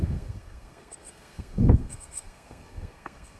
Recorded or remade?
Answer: remade